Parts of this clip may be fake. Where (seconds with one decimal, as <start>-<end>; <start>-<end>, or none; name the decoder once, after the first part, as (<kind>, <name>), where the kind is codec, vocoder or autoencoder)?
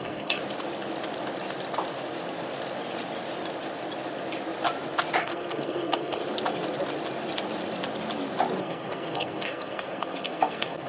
0.0-0.4 (codec, SNAC); 5.2-6.2; 8.6-10.9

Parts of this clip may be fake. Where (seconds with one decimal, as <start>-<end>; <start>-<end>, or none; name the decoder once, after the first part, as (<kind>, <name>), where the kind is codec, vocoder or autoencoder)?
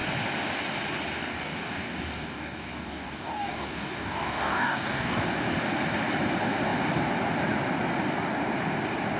1.2-5.2 (codec, DAC)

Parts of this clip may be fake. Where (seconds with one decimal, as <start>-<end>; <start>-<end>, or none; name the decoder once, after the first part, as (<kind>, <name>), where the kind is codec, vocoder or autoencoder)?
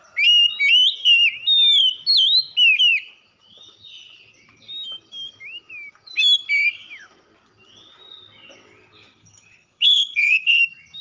9.2-10.6 (codec, HILCodec)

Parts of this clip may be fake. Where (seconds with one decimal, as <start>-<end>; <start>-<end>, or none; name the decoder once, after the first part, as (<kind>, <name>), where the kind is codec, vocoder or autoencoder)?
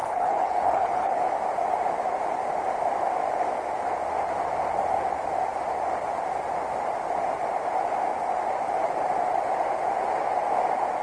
0.0-1.2 (codec, HILCodec)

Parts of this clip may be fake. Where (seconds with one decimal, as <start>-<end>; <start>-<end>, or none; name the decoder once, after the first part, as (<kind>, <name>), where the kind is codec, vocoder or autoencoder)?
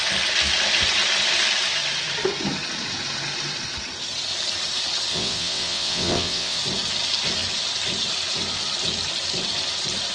5.1-6.6 (vocoder, WaveNeXt)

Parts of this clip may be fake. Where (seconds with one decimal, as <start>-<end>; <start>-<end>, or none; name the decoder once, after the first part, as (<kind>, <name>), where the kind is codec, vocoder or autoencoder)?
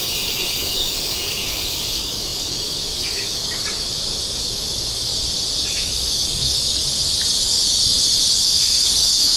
0.0-5.1 (codec, DAC); 5.7-6.8; 8.4-9.4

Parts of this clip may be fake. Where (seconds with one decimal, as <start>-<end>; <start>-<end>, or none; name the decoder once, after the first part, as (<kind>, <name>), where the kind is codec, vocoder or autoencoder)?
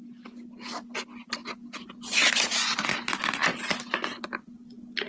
none